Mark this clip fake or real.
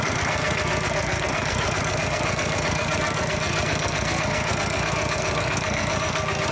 fake